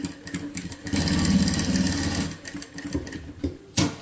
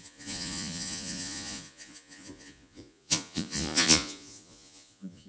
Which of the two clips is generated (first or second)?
second